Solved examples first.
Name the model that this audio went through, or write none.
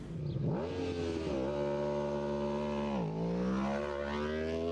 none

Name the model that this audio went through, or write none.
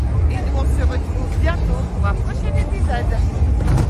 none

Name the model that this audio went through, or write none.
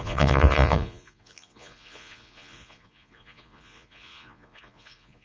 vocoder, Vocos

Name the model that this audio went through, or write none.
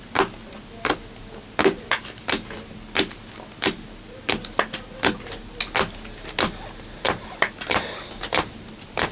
none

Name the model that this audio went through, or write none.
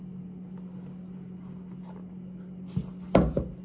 none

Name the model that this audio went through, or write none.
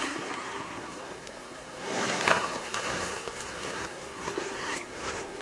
codec, SNAC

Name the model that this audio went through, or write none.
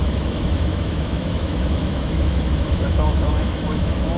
autoencoder, DAC-VAE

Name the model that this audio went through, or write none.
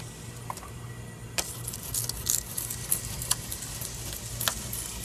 none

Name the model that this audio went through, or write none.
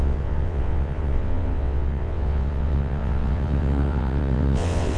vocoder, WaveNeXt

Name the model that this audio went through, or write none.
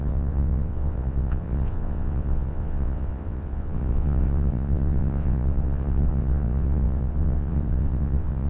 vocoder, WaveNeXt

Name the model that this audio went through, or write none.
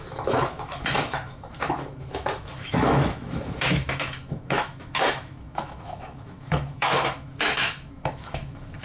autoencoder, DAC-VAE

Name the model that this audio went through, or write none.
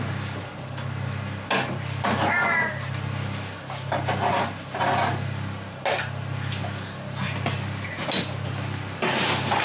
none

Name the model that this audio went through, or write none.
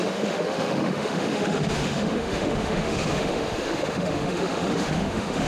autoencoder, DAC-VAE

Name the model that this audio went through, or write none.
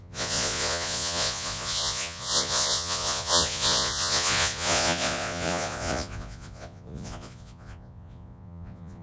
vocoder, Vocos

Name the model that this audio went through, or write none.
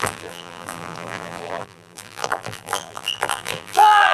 vocoder, BigVGAN v2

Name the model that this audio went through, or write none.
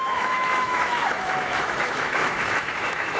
autoencoder, DAC-VAE